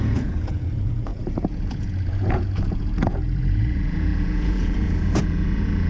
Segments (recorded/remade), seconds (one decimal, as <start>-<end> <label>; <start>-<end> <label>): 0.0-5.9 remade